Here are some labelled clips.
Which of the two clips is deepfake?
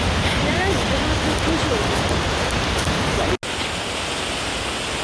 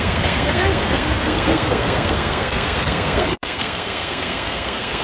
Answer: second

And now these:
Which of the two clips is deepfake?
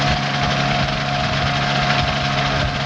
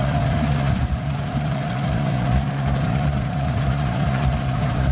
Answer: second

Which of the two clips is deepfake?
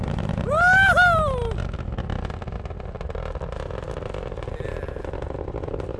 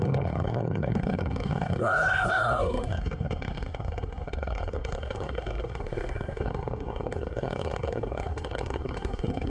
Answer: second